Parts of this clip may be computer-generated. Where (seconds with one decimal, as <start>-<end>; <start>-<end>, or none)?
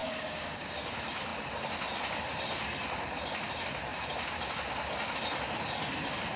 0.0-0.9